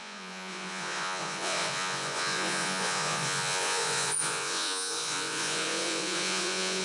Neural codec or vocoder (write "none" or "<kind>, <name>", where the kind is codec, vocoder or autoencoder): vocoder, Vocos